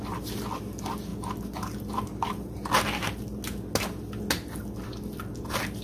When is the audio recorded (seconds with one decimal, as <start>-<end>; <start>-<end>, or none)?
0.0-5.8